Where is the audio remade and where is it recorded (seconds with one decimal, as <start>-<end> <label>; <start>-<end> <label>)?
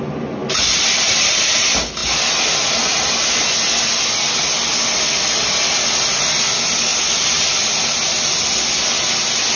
0.0-6.9 recorded; 6.9-7.7 remade; 7.7-9.6 recorded